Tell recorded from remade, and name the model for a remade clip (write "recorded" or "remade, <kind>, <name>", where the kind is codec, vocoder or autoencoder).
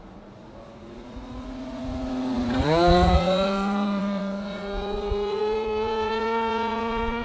remade, vocoder, Vocos